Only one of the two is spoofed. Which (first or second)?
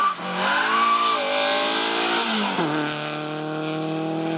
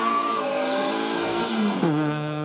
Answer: second